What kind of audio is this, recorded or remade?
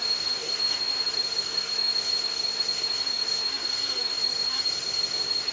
remade